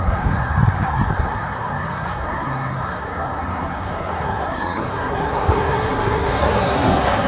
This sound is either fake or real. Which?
fake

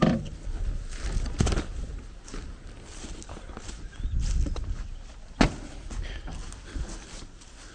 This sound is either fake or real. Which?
real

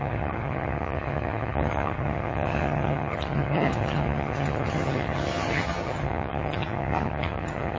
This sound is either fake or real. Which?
fake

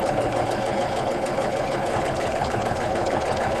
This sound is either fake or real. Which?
fake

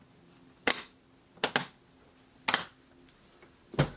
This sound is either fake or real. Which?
real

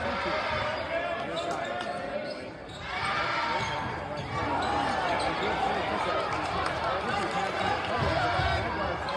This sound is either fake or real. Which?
real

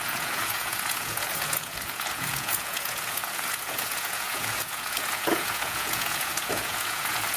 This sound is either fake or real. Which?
fake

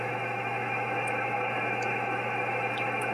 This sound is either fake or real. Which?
fake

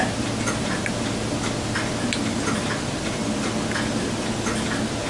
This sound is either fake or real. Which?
real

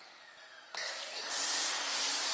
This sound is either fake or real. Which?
real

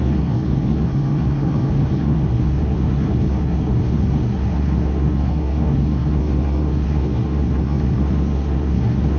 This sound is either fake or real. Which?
fake